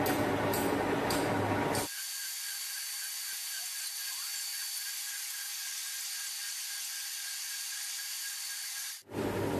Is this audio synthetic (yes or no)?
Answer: no